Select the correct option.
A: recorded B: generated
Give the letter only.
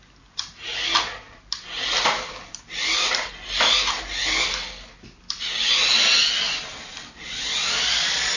A